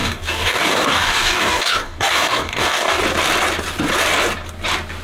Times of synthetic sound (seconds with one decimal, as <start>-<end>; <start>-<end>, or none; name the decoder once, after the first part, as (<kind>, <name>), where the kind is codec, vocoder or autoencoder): 0.0-3.0 (codec, DAC)